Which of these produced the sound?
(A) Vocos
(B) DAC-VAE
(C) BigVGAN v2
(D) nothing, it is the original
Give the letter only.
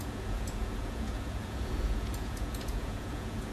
A